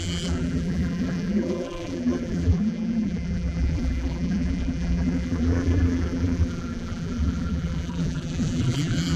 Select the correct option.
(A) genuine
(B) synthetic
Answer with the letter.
B